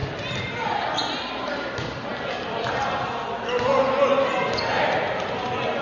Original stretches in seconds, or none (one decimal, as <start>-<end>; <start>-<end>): 0.0-5.8